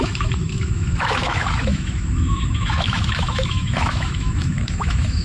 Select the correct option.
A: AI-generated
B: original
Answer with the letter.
A